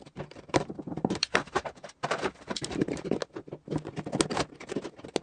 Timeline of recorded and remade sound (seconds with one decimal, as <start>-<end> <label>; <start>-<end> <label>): 0.0-3.1 remade; 3.1-5.2 recorded